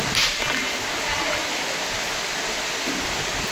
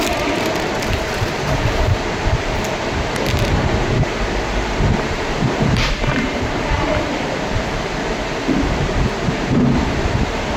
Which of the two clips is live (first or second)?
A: first